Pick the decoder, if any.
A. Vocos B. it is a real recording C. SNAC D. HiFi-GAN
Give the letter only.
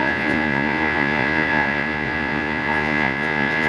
A